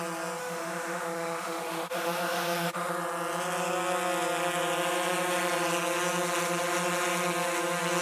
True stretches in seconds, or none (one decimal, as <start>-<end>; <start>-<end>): 0.0-0.4; 2.9-8.0

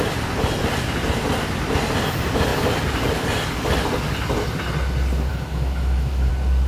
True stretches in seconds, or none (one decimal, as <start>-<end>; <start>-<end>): 0.0-5.3; 6.3-6.7

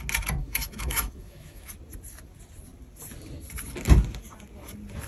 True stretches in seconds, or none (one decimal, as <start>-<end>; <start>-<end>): 0.0-0.4; 1.7-5.1